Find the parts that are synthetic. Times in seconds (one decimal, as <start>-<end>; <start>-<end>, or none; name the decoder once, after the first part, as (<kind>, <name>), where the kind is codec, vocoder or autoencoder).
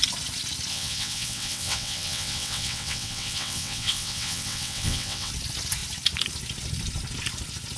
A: 0.7-5.3 (vocoder, WaveNeXt)